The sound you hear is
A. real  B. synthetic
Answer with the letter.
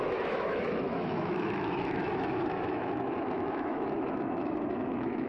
B